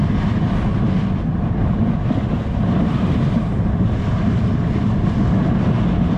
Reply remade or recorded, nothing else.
recorded